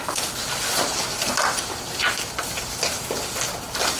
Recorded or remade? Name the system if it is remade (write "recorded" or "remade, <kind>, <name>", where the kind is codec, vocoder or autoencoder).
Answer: recorded